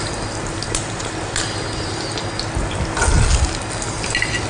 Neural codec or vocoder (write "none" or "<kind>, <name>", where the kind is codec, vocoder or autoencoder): none